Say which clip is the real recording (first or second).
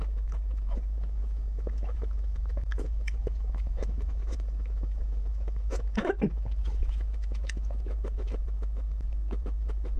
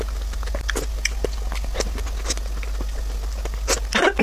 second